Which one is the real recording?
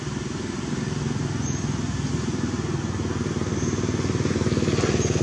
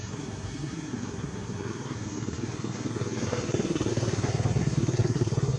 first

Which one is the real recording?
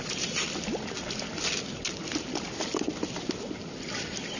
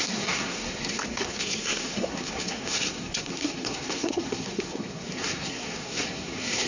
first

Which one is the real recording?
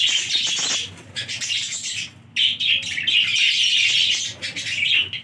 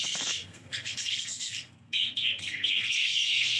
first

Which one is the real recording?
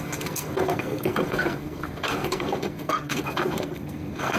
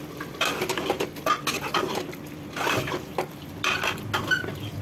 second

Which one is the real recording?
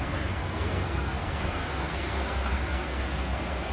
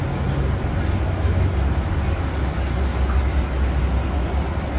second